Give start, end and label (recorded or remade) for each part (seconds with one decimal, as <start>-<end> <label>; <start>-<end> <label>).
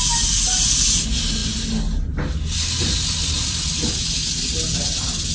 0.0-5.3 recorded